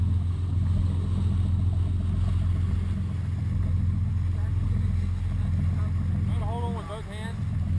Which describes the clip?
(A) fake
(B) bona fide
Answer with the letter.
B